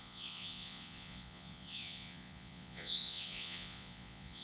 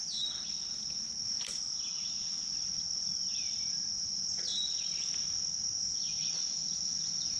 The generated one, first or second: first